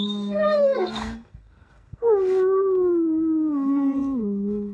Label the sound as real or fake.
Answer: fake